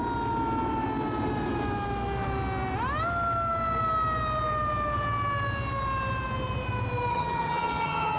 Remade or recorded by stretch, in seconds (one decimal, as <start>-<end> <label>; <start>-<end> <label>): 0.0-7.1 recorded; 7.1-8.2 remade